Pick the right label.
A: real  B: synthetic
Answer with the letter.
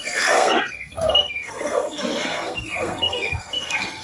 B